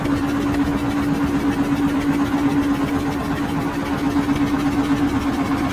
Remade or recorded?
recorded